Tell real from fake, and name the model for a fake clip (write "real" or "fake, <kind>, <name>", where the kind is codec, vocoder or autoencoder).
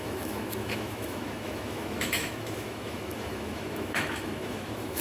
fake, autoencoder, DAC-VAE